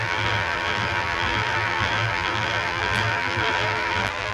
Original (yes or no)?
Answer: no